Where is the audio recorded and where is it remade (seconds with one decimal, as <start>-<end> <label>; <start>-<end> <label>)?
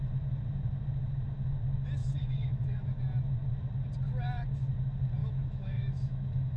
0.0-2.0 recorded; 2.0-3.0 remade; 3.0-5.2 recorded; 5.2-6.6 remade